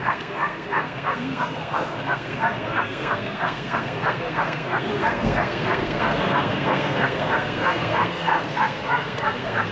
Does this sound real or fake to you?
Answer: fake